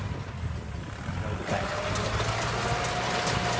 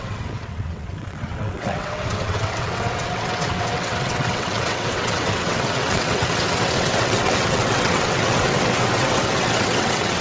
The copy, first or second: second